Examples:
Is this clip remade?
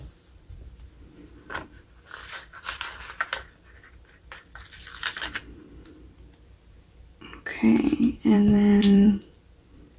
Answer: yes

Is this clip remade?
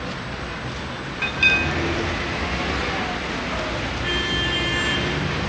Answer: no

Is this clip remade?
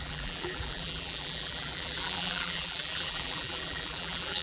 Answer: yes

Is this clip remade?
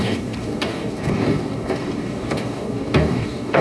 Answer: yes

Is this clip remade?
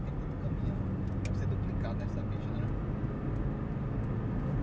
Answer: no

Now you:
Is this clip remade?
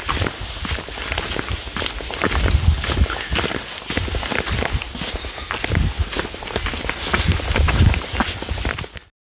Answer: no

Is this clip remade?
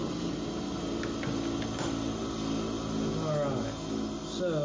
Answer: no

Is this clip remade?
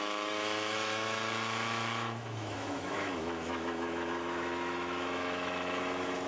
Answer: yes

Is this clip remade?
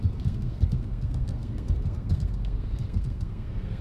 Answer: yes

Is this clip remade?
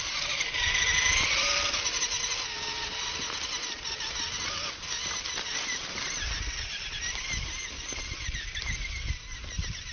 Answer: no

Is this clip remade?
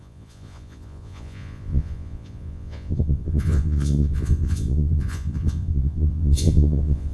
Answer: yes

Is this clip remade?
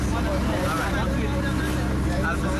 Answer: no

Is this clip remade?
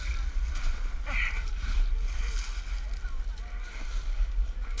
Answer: no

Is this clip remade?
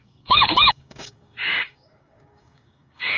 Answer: yes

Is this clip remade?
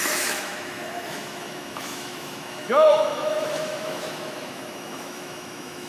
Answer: yes